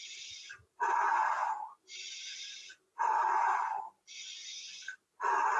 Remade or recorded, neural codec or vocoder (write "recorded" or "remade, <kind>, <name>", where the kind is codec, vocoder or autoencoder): recorded